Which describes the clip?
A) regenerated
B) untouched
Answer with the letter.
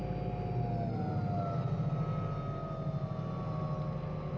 B